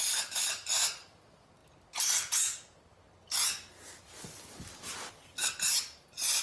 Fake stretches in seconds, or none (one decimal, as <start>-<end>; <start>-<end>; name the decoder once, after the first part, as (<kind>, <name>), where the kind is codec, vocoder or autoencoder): none

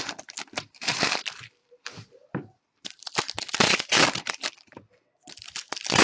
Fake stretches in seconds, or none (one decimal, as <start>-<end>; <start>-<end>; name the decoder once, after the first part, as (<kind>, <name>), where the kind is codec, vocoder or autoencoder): 0.0-6.0 (vocoder, BigVGAN v2)

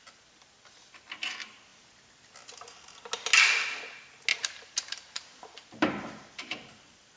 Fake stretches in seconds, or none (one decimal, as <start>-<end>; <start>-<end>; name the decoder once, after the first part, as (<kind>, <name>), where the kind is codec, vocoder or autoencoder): 4.3-6.7 (vocoder, BigVGAN v2)